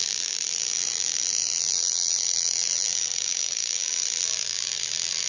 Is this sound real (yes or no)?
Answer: no